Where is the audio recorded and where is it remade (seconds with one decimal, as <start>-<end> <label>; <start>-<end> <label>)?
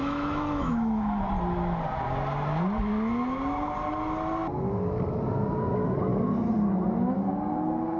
0.0-1.2 remade; 1.2-8.0 recorded